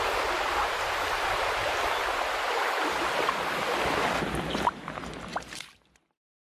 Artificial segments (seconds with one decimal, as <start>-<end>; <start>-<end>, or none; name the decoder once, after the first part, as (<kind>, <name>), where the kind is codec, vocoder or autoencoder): none